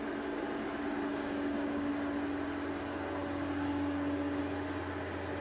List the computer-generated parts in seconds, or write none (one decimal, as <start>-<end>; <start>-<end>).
1.1-1.9